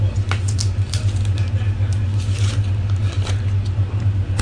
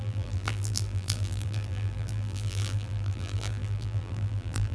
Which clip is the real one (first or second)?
first